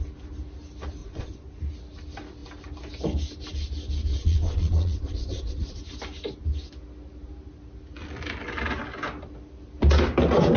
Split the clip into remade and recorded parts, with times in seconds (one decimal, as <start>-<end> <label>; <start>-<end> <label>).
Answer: 0.0-1.0 recorded; 1.0-1.6 remade; 1.6-4.1 recorded; 4.1-5.8 remade; 5.8-10.6 recorded